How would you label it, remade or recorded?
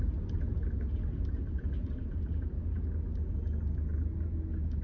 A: recorded